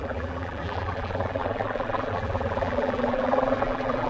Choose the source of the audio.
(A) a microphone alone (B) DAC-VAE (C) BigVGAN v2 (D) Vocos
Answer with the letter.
C